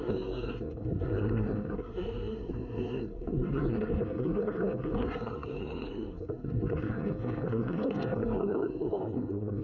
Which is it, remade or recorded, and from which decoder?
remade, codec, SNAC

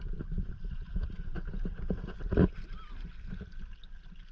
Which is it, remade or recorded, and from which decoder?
recorded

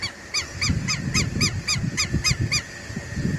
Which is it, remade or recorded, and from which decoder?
recorded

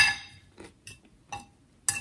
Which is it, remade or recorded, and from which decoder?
recorded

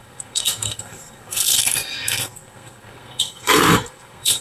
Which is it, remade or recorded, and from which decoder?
remade, codec, SNAC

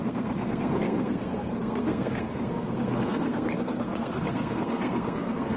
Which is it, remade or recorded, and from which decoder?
remade, codec, SNAC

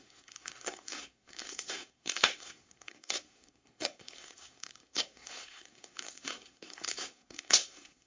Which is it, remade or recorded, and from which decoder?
remade, codec, SNAC